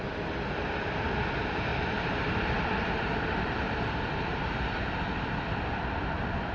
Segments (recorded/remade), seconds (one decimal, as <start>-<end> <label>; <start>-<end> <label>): 0.0-1.7 recorded; 1.7-4.9 remade; 4.9-6.5 recorded